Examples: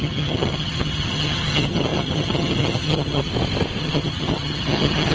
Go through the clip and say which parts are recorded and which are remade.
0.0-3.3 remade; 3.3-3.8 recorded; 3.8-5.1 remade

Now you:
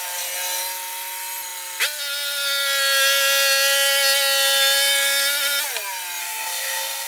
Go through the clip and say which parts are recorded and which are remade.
0.0-6.2 recorded; 6.2-7.1 remade

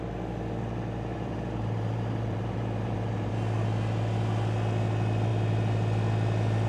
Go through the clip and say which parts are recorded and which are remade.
0.0-1.1 recorded; 1.1-3.3 remade; 3.3-6.7 recorded

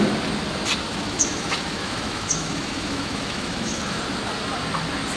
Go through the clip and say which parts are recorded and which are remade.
0.0-0.9 recorded; 0.9-4.0 remade; 4.0-5.2 recorded